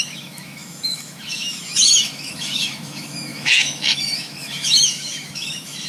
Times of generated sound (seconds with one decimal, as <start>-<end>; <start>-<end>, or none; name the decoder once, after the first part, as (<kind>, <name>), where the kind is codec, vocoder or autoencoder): 0.0-5.9 (autoencoder, DAC-VAE)

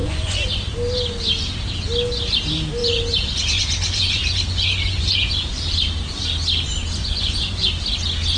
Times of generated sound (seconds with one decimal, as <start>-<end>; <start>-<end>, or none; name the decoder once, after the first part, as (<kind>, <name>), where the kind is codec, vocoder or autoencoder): 0.0-0.5 (vocoder, Vocos); 2.8-5.6; 7.0-7.7

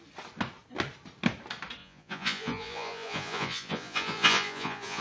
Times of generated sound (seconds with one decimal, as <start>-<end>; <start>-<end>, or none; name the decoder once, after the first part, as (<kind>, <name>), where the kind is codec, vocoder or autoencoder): 1.8-5.0 (vocoder, Vocos)

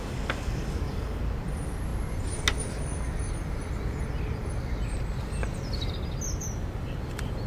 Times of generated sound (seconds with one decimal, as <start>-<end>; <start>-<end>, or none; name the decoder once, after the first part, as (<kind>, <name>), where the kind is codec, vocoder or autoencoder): 0.0-1.2 (codec, DAC)